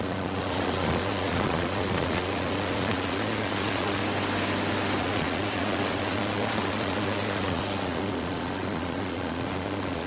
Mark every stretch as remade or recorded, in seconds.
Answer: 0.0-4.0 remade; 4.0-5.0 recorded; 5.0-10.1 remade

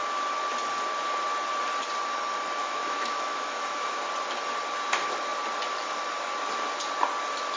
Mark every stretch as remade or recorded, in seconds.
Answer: 0.0-2.6 recorded; 2.6-4.0 remade; 4.0-7.6 recorded

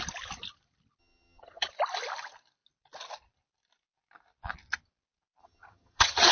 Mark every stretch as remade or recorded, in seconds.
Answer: 0.0-1.0 recorded; 1.0-1.7 remade; 1.7-5.4 recorded; 5.4-6.3 remade

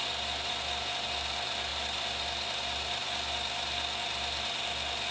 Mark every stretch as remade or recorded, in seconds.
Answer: 0.0-5.1 recorded

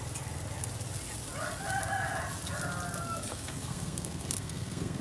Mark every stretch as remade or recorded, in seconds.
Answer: 0.0-3.3 recorded; 3.3-5.0 remade